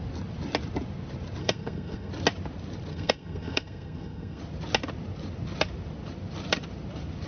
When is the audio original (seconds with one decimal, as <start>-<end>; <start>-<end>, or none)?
0.0-1.4; 2.1-2.9; 4.4-7.3